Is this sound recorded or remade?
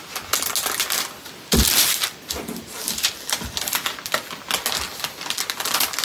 recorded